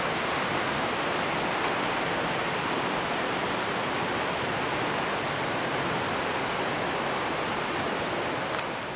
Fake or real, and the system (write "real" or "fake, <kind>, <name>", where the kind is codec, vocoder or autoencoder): real